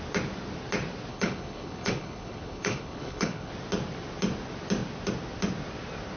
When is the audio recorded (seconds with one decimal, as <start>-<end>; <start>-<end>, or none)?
0.0-1.1; 3.5-6.2